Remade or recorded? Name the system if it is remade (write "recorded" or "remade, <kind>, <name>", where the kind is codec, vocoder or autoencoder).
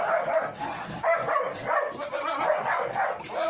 recorded